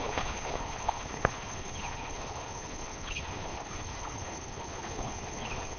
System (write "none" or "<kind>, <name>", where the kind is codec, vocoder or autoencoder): codec, HILCodec